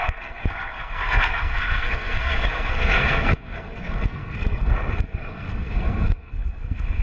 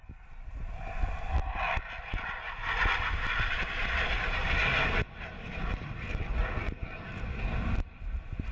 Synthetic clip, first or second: first